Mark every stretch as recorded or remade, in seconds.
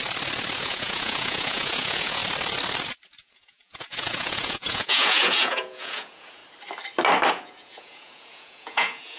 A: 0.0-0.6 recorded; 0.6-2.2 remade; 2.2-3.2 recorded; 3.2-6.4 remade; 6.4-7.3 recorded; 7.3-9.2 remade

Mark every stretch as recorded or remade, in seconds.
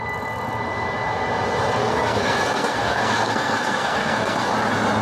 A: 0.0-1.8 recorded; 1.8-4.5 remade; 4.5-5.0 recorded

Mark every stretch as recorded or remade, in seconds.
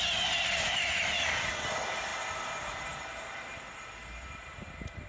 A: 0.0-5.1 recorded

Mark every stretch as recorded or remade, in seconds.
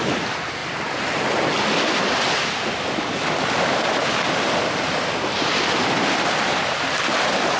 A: 0.0-7.6 recorded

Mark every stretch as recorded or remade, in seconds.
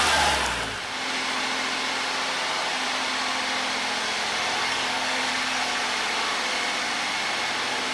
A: 0.0-4.6 recorded; 4.6-5.3 remade; 5.3-7.9 recorded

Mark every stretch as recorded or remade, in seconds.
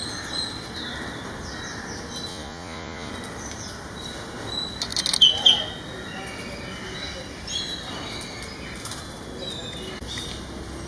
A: 0.0-2.3 recorded; 2.3-3.1 remade; 3.1-10.9 recorded